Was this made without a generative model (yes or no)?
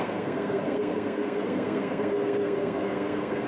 no